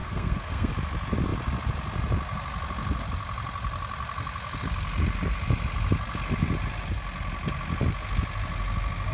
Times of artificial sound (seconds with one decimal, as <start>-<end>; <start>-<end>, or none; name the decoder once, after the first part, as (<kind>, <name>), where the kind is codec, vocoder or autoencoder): 0.0-0.7 (codec, SNAC)